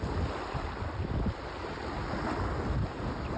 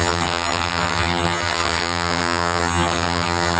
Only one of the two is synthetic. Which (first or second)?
second